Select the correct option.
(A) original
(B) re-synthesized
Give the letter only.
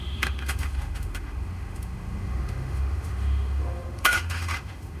B